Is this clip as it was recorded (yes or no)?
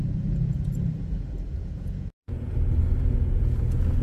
no